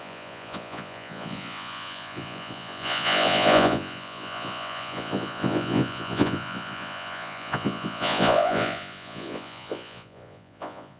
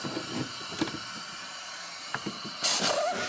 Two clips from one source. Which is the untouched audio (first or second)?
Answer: second